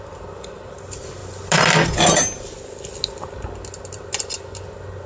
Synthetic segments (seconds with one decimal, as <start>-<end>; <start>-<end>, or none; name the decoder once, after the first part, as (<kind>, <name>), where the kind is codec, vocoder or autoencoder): none